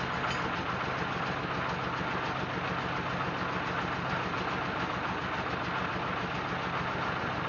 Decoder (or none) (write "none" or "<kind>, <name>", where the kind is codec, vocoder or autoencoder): none